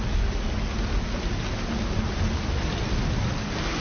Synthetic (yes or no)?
no